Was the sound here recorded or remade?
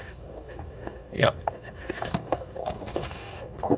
remade